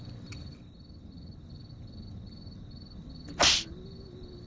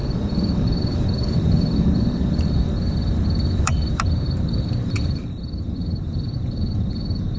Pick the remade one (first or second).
second